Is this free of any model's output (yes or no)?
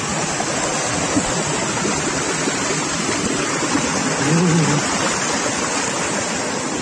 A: yes